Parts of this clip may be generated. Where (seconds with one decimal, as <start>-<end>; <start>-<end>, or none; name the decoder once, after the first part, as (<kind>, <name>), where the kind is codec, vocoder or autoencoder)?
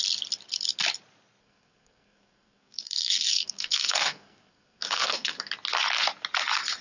1.4-5.5 (codec, SNAC)